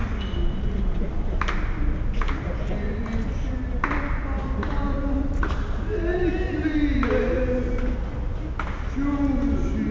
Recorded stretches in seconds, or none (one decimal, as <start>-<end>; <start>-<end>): 0.0-9.9